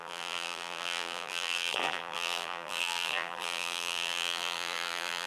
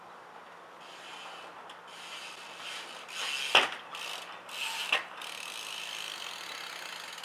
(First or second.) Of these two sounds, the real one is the second